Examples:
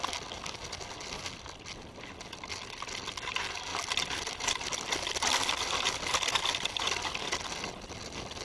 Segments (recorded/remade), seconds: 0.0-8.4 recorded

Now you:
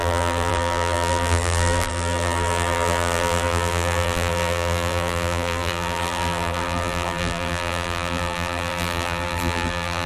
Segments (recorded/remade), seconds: 0.0-10.1 remade